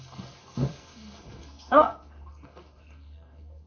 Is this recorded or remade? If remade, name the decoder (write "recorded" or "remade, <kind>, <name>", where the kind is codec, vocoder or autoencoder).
remade, codec, SNAC